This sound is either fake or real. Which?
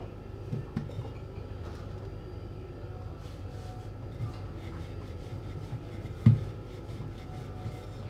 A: real